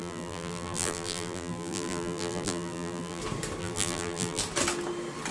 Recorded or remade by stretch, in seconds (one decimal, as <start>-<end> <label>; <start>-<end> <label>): 0.0-3.2 remade; 3.2-3.6 recorded; 3.6-4.4 remade; 4.4-5.3 recorded